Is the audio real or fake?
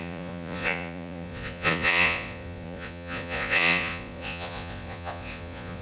fake